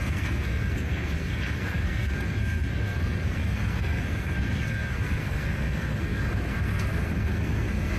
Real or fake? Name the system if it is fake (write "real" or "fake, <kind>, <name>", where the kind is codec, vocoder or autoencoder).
fake, codec, SNAC